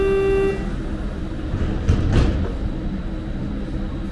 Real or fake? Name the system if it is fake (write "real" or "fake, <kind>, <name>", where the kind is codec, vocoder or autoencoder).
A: real